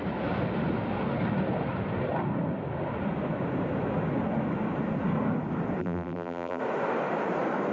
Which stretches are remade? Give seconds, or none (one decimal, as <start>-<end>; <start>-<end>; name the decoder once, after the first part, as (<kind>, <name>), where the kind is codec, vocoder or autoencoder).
5.8-6.6 (vocoder, BigVGAN v2)